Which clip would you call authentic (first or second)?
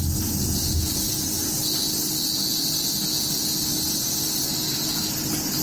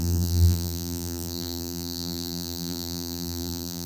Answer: first